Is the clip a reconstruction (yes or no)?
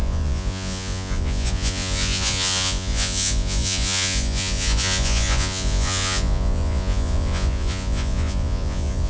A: yes